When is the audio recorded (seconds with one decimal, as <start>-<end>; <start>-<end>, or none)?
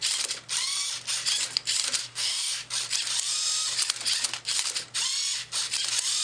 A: 0.0-2.0; 2.5-6.2